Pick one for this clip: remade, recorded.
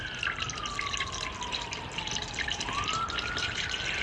recorded